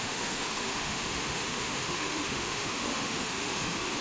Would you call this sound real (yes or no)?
no